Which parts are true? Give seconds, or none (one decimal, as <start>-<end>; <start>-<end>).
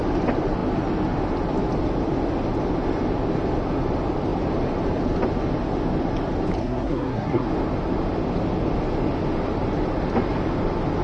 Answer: 0.0-6.6; 7.5-11.0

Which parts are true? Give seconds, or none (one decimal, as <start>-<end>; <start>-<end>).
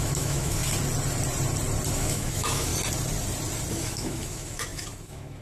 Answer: 0.6-1.9; 2.7-3.7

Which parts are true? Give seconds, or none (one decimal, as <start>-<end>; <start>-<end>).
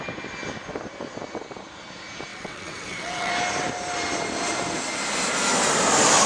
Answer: 0.0-2.3; 3.3-6.3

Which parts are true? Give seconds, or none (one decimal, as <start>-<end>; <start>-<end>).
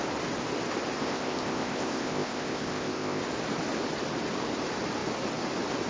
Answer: 0.0-1.0; 3.2-5.9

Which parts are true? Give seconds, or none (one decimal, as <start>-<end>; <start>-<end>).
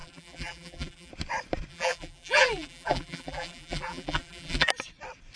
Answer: 1.1-1.7; 4.7-5.4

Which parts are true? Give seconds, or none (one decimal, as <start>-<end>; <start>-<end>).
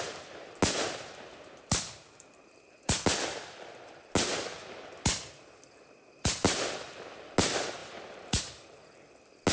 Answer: 0.0-9.5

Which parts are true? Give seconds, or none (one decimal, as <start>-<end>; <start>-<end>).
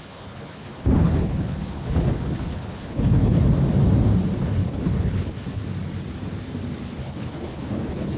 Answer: 3.4-4.4; 5.6-7.0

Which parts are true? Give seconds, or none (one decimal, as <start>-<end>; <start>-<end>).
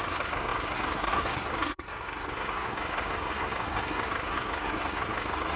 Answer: none